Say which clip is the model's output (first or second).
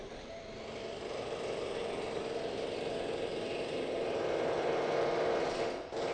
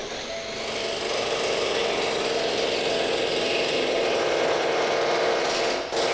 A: first